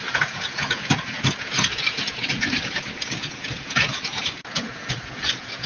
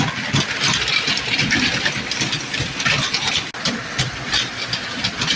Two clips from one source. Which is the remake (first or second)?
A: first